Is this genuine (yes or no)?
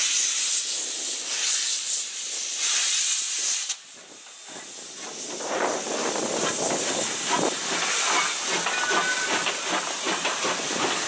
yes